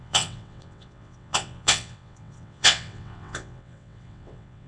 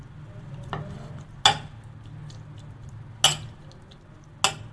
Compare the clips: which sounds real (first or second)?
second